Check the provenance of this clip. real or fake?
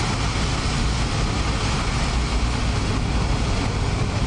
real